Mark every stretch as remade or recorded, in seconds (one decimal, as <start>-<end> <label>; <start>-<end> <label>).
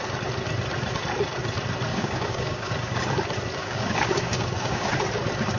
0.0-1.9 recorded; 1.9-3.0 remade; 3.0-3.6 recorded; 3.6-4.9 remade; 4.9-5.6 recorded